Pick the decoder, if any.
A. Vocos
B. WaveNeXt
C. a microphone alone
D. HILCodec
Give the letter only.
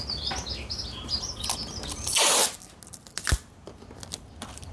C